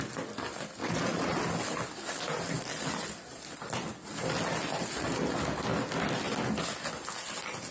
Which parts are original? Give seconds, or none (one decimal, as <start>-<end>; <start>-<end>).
0.0-0.8; 1.4-7.7